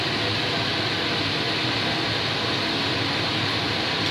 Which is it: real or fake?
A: real